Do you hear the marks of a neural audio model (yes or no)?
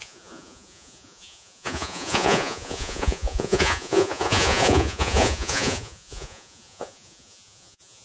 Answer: yes